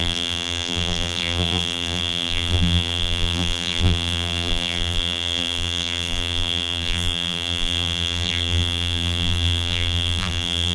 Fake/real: fake